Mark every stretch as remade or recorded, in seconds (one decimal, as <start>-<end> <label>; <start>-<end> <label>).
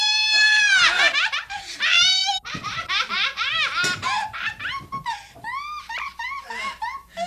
0.0-7.3 remade